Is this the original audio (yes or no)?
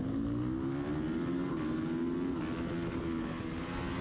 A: yes